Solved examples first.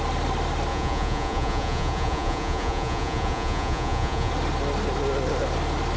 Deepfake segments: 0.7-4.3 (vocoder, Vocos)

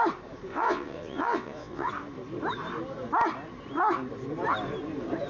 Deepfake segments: 0.5-1.9 (vocoder, WaveNeXt)

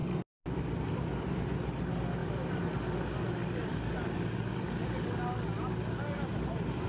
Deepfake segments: none

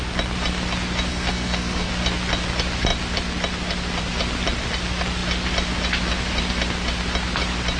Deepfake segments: 1.1-1.9 (codec, SNAC)

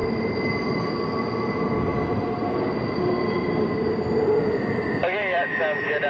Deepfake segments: 1.4-1.9 (vocoder, BigVGAN v2); 3.0-6.1

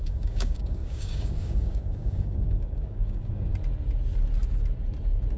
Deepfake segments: 0.0-3.5 (codec, DAC)

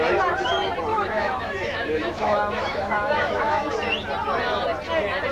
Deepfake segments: 0.9-3.7 (autoencoder, DAC-VAE)